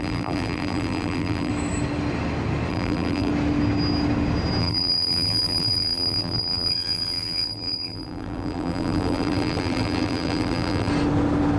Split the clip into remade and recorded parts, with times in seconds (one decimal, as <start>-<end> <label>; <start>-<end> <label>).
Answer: 0.0-1.5 remade; 1.5-2.7 recorded; 2.7-3.3 remade; 3.3-4.6 recorded; 4.6-10.9 remade; 10.9-11.6 recorded

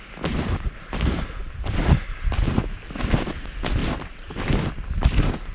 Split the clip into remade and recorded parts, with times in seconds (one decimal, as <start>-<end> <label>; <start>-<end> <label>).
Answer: 0.0-1.4 recorded; 1.4-2.3 remade; 2.3-3.8 recorded; 3.8-4.4 remade; 4.4-5.5 recorded